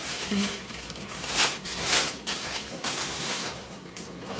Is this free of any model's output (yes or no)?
no